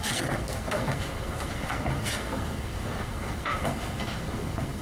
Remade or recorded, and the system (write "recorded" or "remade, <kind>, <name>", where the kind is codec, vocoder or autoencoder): remade, codec, SNAC